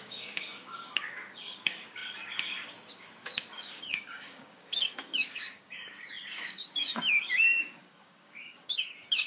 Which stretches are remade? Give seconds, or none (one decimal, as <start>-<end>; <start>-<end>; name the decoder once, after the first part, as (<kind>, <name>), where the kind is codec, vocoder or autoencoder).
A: 0.0-9.3 (codec, DAC)